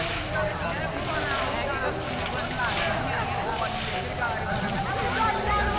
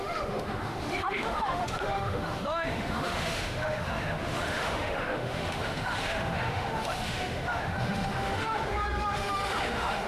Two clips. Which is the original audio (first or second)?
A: first